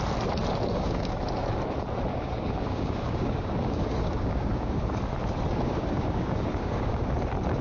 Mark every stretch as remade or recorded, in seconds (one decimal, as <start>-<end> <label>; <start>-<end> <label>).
0.0-0.7 recorded; 0.7-1.2 remade; 1.2-2.1 recorded; 2.1-4.9 remade; 4.9-5.5 recorded; 5.5-7.1 remade; 7.1-7.6 recorded